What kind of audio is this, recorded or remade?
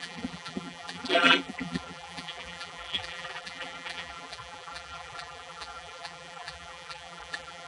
remade